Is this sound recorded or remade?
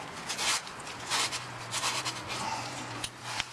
remade